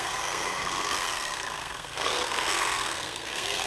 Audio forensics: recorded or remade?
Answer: remade